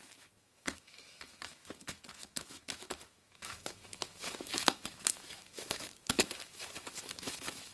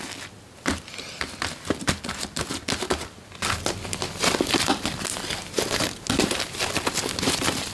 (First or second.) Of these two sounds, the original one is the second